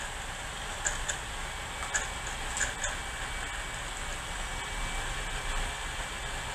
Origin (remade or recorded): recorded